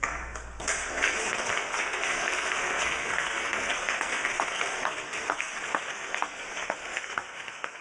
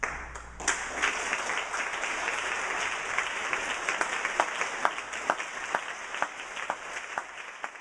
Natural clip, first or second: second